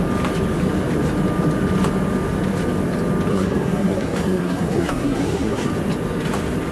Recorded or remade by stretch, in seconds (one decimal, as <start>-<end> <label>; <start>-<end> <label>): 0.0-3.3 recorded; 3.3-5.7 remade; 5.7-6.7 recorded